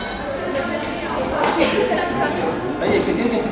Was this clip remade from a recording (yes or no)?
no